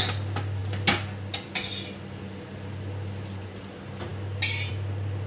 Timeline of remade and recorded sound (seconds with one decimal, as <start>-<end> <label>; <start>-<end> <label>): 0.0-5.3 recorded

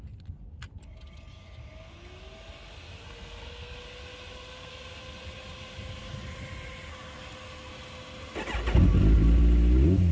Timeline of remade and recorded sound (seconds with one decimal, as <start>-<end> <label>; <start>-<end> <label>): 0.0-3.0 recorded; 3.0-3.8 remade; 3.8-4.5 recorded; 4.5-5.0 remade; 5.0-10.1 recorded

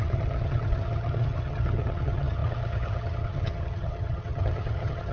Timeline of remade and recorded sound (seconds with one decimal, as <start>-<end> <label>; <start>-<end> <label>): 0.0-5.1 remade